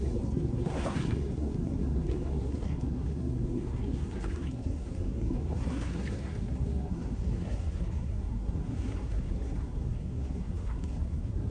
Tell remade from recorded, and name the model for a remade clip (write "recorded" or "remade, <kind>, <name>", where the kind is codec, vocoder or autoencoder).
remade, codec, SNAC